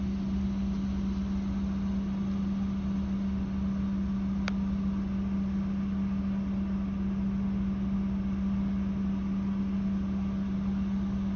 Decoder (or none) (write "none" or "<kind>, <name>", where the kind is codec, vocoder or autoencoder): none